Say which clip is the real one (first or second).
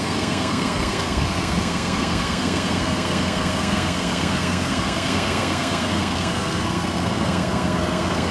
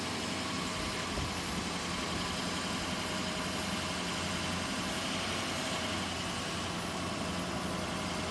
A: second